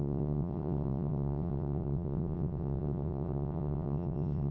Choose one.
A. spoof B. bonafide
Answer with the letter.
A